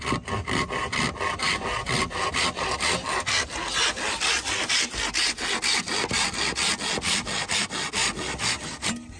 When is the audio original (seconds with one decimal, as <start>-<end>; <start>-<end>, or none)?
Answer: 0.0-9.2